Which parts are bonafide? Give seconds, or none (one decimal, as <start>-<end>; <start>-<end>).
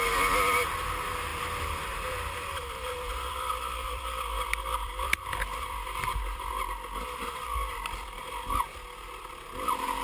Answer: 0.0-1.3; 6.5-10.0